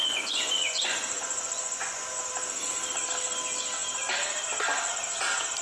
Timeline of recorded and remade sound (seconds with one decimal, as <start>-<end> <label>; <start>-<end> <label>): 0.0-2.3 remade; 2.3-5.6 recorded